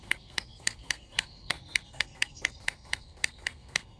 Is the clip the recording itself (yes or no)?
no